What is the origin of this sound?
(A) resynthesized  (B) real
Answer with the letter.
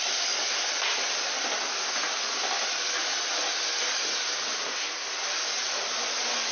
B